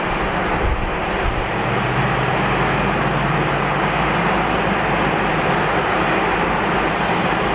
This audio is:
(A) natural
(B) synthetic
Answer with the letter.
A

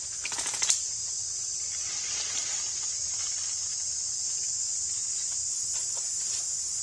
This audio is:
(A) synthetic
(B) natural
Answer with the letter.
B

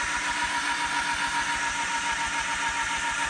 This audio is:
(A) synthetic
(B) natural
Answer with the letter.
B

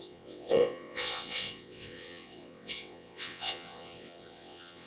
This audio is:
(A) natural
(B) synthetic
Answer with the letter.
B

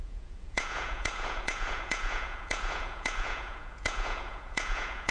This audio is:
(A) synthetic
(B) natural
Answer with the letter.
A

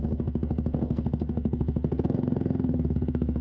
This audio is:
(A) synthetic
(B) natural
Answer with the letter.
A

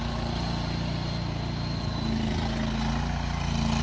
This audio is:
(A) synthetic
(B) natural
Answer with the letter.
B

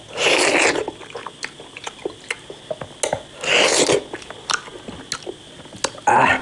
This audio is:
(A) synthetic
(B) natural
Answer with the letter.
B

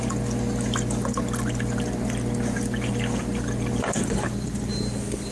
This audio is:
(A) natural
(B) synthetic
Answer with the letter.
A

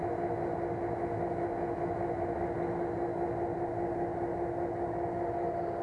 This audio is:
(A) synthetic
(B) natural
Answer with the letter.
B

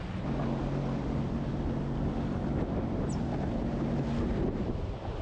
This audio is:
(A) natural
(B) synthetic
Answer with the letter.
A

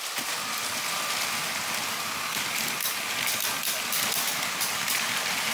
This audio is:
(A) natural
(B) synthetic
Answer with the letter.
A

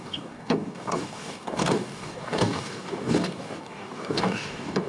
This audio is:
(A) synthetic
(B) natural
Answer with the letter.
A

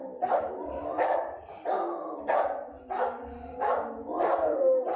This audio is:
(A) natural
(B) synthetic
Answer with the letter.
A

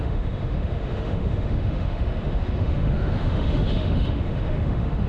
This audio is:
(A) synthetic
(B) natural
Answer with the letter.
A